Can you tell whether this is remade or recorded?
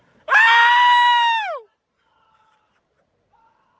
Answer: recorded